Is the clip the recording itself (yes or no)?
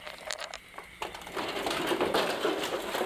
yes